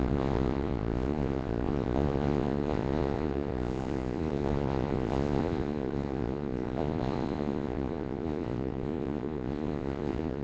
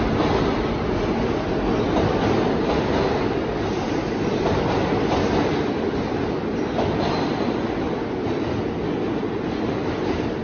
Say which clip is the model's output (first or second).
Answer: first